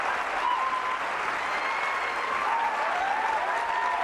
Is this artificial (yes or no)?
no